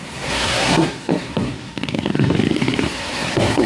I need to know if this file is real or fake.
fake